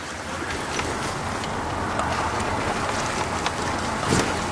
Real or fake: real